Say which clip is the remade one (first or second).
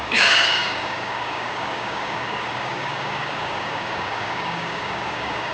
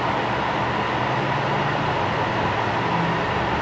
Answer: first